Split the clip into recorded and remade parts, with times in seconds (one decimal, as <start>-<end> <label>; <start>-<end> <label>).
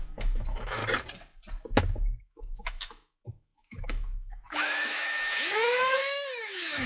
0.0-0.8 remade; 0.8-2.2 recorded; 2.2-6.9 remade